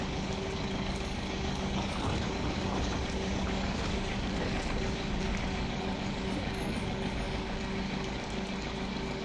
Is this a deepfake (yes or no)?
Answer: yes